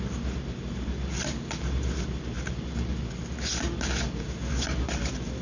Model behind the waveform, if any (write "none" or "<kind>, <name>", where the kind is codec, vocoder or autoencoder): none